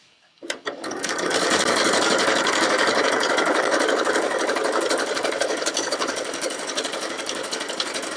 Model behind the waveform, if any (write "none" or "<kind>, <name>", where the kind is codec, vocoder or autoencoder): codec, DAC